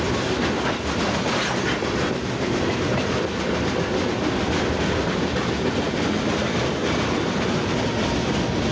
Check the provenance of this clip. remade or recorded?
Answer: recorded